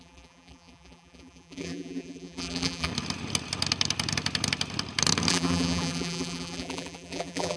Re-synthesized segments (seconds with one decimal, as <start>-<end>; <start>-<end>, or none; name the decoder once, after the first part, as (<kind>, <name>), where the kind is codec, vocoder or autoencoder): 0.0-2.9 (vocoder, BigVGAN v2); 5.3-7.6